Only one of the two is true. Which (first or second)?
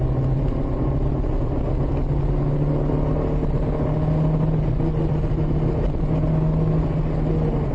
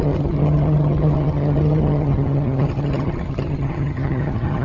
first